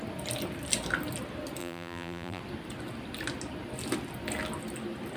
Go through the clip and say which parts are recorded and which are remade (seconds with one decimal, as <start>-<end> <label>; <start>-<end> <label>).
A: 0.0-1.6 recorded; 1.6-2.4 remade; 2.4-5.2 recorded